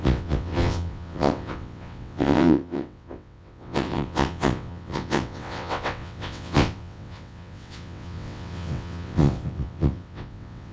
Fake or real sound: fake